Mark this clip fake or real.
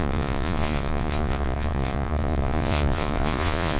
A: fake